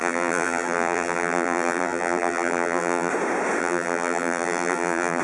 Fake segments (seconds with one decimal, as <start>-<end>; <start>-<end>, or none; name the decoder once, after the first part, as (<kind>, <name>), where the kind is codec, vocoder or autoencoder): 0.0-3.1 (vocoder, BigVGAN v2); 3.6-5.2